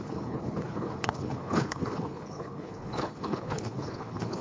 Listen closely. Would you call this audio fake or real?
fake